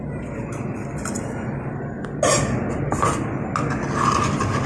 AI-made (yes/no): no